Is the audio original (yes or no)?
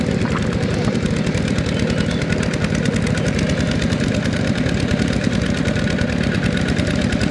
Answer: no